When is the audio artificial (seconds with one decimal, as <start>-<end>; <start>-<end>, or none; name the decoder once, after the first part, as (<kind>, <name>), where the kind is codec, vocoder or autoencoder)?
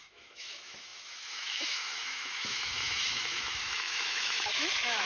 0.0-5.1 (autoencoder, DAC-VAE)